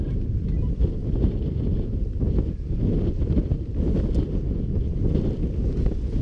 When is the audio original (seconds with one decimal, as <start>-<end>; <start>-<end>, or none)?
0.0-6.2